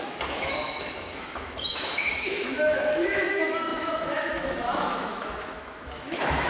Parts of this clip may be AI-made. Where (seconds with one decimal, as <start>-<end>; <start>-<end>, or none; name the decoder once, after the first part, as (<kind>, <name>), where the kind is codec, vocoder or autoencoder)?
0.0-6.5 (autoencoder, DAC-VAE)